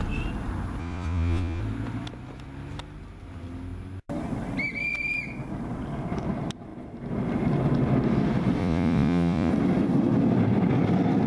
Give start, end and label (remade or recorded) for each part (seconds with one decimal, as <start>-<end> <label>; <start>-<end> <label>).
0.0-0.8 recorded; 0.8-1.6 remade; 1.6-8.6 recorded; 8.6-9.5 remade; 9.5-11.3 recorded